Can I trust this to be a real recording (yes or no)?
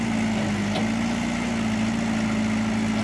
yes